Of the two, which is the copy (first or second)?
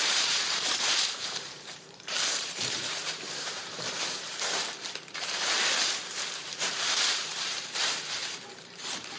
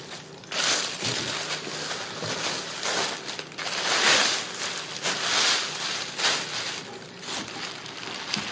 first